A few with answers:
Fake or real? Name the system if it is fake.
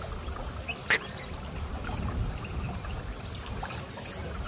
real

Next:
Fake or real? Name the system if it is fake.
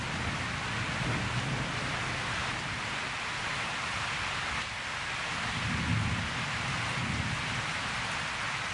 real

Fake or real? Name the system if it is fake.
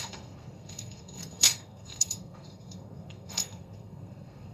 fake, codec, SNAC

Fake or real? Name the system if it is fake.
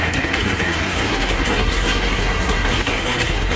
fake, codec, SNAC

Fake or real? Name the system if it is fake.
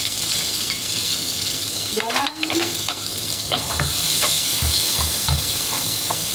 fake, codec, SNAC